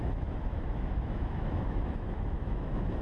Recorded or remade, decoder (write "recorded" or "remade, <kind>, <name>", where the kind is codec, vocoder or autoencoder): remade, autoencoder, DAC-VAE